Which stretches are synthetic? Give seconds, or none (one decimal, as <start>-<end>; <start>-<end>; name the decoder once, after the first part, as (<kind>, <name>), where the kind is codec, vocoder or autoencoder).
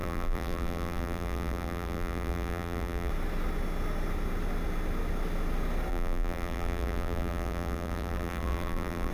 0.0-3.1 (vocoder, BigVGAN v2); 5.9-9.1